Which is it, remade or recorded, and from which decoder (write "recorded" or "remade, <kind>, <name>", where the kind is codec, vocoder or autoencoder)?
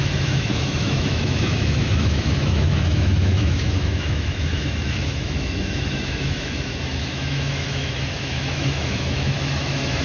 remade, autoencoder, DAC-VAE